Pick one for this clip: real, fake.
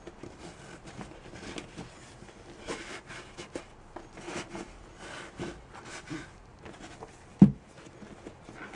real